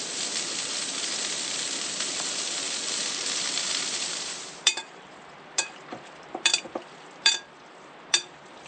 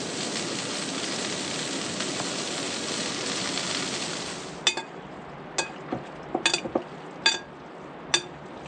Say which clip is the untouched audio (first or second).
second